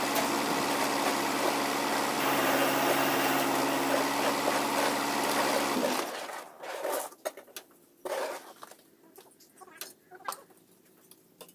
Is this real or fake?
real